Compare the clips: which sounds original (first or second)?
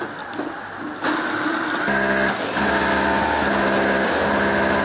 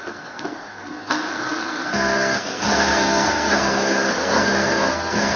first